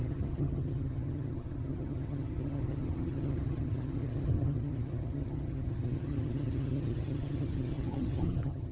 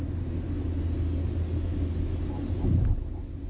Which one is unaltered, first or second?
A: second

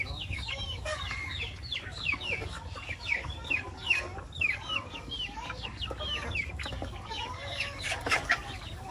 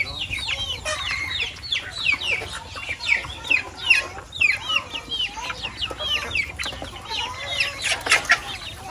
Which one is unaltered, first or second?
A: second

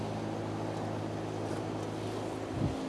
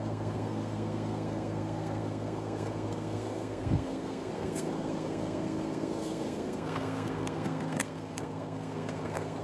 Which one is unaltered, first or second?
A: first